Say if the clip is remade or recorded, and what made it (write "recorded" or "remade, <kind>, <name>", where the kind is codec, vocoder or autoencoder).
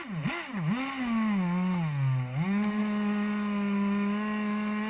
recorded